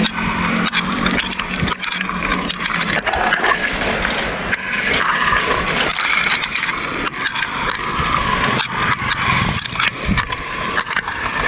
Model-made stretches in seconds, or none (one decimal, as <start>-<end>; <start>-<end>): 0.0-2.3; 3.5-6.7; 10.3-11.5